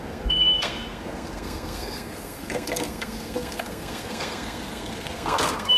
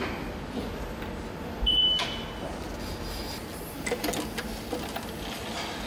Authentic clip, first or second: second